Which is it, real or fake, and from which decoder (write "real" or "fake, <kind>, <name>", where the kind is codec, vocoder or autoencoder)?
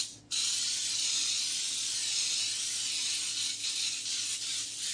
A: real